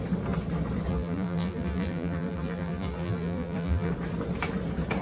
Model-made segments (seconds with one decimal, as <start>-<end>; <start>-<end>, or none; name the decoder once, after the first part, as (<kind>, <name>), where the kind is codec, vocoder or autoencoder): 0.9-3.9 (vocoder, BigVGAN v2)